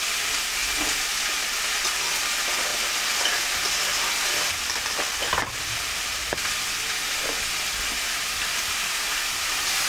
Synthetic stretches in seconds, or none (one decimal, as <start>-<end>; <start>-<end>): none